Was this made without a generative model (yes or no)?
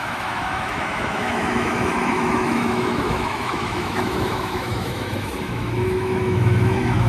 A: no